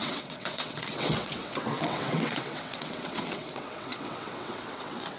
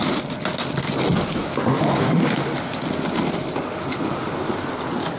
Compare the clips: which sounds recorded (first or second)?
second